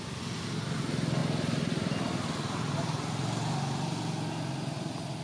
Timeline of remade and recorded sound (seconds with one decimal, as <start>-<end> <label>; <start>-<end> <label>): 0.0-5.2 recorded